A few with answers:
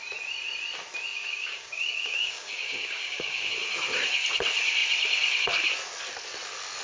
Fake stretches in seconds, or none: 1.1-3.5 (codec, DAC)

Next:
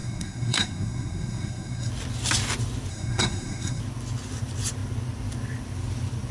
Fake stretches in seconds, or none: 0.0-1.9 (codec, SNAC); 2.9-3.8

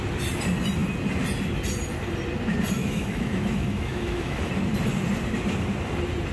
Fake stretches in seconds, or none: 2.8-4.5 (autoencoder, DAC-VAE)